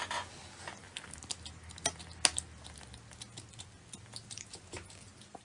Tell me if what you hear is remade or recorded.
recorded